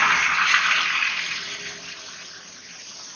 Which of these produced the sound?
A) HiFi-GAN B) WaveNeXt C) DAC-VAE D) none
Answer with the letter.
D